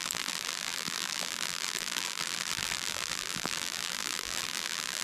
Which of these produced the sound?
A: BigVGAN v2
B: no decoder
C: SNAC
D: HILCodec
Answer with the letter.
A